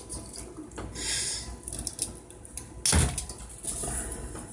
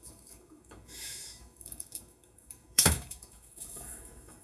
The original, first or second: first